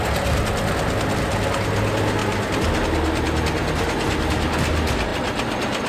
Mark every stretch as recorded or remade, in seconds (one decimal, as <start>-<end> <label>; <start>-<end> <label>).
0.0-5.9 recorded